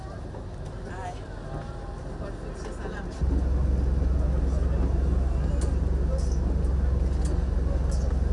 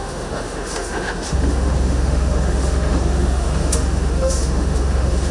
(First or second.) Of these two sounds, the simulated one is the second